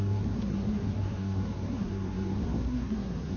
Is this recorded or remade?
remade